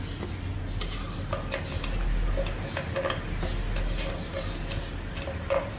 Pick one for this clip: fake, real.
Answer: real